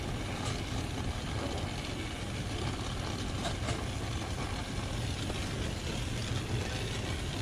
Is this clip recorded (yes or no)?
yes